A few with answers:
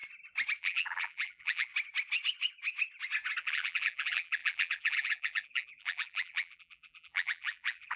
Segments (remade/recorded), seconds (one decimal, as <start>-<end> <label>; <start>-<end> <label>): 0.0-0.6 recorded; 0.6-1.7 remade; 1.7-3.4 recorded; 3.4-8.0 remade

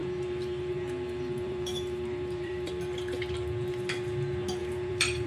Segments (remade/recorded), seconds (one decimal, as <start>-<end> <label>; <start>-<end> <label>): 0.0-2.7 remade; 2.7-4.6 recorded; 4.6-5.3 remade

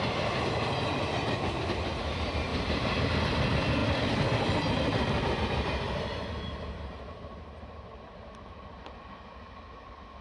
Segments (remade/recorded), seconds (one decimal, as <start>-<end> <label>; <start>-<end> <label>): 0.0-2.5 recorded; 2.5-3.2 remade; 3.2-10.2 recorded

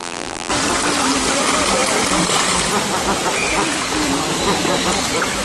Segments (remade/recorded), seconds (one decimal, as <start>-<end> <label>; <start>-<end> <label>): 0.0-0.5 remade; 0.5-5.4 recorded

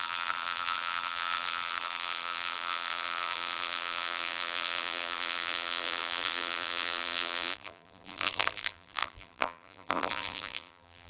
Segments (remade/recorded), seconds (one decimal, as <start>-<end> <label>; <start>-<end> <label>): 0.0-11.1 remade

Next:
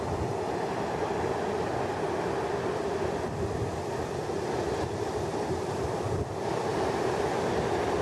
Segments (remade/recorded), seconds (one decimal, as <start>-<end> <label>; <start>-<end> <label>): 0.0-6.7 recorded; 6.7-7.5 remade; 7.5-8.0 recorded